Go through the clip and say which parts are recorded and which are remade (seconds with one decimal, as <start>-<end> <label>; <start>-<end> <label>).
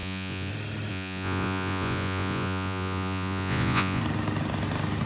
0.0-0.5 remade; 0.5-0.9 recorded; 0.9-4.0 remade; 4.0-5.1 recorded